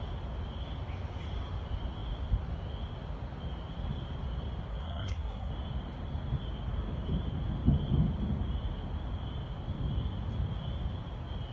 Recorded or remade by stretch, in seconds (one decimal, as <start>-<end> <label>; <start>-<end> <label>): 0.0-4.7 recorded; 4.7-5.5 remade; 5.5-11.5 recorded